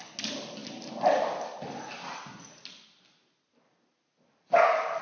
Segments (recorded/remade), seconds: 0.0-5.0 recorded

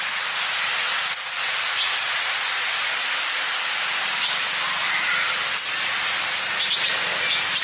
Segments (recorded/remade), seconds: 0.0-7.6 recorded

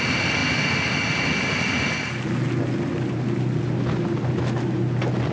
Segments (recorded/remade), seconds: 0.0-5.3 recorded

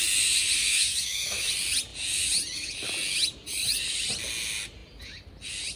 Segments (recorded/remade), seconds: 0.0-0.7 recorded; 0.7-1.5 remade; 1.5-5.8 recorded

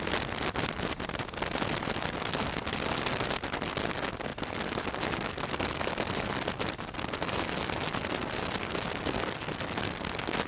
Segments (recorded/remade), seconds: 0.0-10.5 recorded

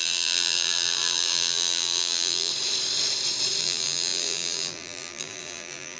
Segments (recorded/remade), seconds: 0.0-2.5 remade; 2.5-3.6 recorded; 3.6-6.0 remade

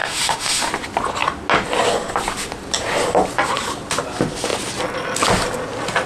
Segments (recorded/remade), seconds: 0.0-0.7 remade; 0.7-6.1 recorded

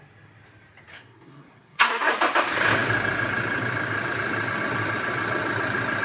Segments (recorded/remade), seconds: 0.0-0.9 recorded; 0.9-2.1 remade; 2.1-6.0 recorded